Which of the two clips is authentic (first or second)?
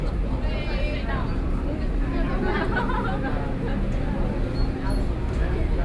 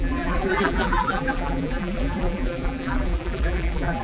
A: first